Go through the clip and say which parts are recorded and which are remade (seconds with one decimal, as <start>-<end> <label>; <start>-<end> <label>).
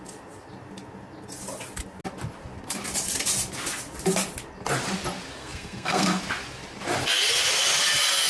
0.0-5.4 recorded; 5.4-6.2 remade; 6.2-8.3 recorded